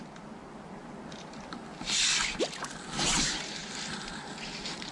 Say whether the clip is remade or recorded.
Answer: recorded